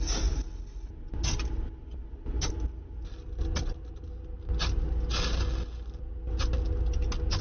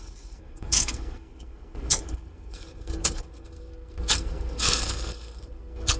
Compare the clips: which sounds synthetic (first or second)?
second